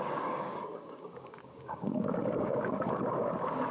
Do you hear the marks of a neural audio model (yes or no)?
yes